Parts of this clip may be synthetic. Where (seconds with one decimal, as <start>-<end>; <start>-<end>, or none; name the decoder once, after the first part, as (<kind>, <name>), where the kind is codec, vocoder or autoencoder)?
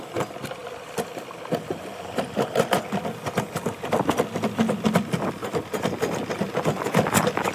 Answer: none